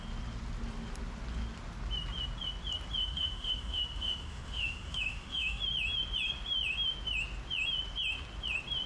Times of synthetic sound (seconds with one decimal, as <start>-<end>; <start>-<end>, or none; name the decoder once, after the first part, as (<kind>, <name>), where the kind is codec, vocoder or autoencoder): 3.0-5.6 (autoencoder, DAC-VAE)

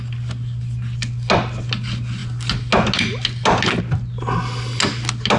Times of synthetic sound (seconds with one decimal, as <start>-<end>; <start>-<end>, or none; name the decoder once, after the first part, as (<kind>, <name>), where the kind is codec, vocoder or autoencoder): none